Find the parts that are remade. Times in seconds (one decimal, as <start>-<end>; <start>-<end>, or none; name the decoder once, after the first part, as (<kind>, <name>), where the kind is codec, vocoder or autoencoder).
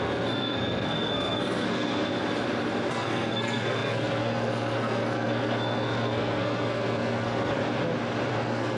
0.0-2.1 (codec, SNAC); 2.9-7.6; 8.3-8.8